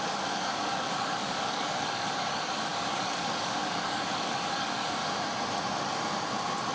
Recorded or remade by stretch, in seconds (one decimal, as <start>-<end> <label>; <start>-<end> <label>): 0.0-5.0 remade; 5.0-6.7 recorded